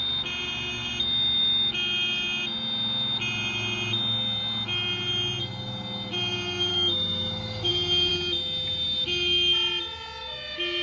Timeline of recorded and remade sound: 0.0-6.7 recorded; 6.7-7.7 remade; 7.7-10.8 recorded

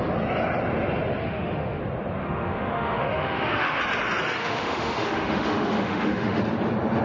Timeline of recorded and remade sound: 0.0-1.2 recorded; 1.2-1.8 remade; 1.8-2.2 recorded; 2.2-3.8 remade; 3.8-4.4 recorded; 4.4-6.4 remade; 6.4-7.0 recorded

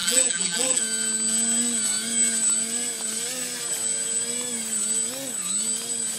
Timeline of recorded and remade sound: 0.0-0.8 remade; 0.8-6.2 recorded

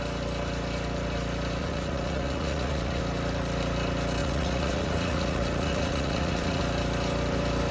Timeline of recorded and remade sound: 0.0-1.6 recorded; 1.6-3.0 remade; 3.0-4.2 recorded; 4.2-6.6 remade; 6.6-7.7 recorded

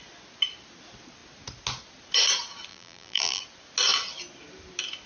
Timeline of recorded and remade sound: 0.0-2.7 recorded; 2.7-3.4 remade; 3.4-5.1 recorded

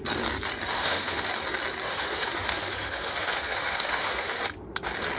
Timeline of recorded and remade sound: 0.0-0.7 recorded; 0.7-1.3 remade; 1.3-1.9 recorded; 1.9-4.4 remade; 4.4-5.2 recorded

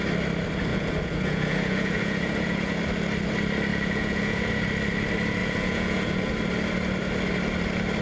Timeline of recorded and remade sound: 0.0-0.7 recorded; 0.7-2.8 remade; 2.8-3.7 recorded; 3.7-4.7 remade; 4.7-5.4 recorded; 5.4-6.3 remade; 6.3-8.0 recorded

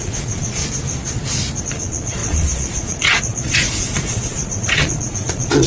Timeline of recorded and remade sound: 0.0-0.6 remade; 0.6-1.6 recorded; 1.6-5.7 remade